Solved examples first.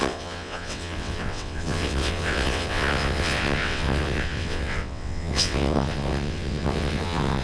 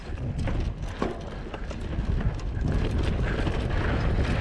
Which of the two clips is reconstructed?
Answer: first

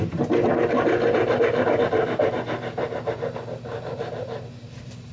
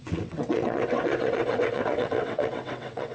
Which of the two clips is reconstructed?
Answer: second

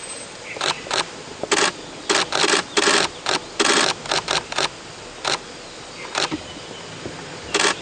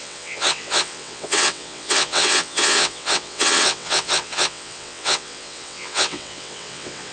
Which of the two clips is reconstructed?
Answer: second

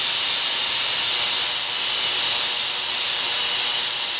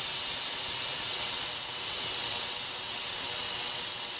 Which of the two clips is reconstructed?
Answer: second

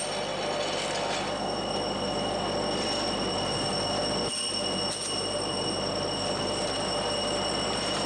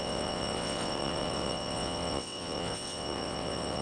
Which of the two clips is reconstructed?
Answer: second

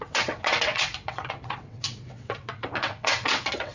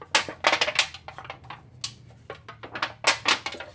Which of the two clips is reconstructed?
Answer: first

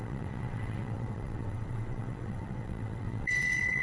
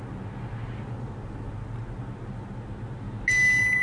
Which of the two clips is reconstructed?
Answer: first